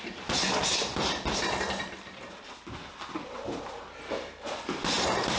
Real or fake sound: real